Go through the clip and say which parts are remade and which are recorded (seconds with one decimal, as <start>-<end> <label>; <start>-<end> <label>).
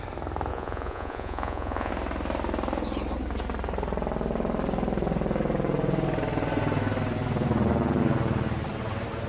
0.0-0.5 recorded; 0.5-1.9 remade; 1.9-9.3 recorded